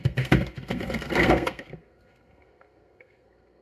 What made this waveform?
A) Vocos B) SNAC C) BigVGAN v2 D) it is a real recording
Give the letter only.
B